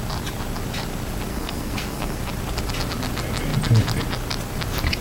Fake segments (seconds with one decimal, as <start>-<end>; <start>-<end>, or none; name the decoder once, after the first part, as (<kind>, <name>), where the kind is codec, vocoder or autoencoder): 1.3-2.2 (codec, SNAC)